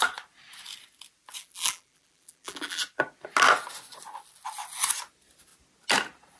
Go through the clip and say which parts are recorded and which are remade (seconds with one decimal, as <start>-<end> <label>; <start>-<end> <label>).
0.0-1.4 recorded; 1.4-2.8 remade; 2.8-6.4 recorded